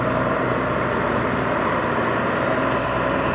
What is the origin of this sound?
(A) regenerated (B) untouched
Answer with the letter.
B